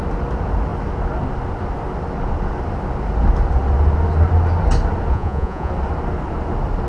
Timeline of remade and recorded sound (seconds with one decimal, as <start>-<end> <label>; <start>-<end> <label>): 0.0-5.1 recorded; 5.1-5.7 remade; 5.7-6.9 recorded

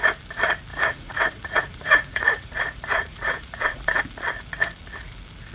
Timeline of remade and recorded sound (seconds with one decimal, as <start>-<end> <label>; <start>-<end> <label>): 0.0-0.7 recorded; 0.7-4.0 remade; 4.0-5.5 recorded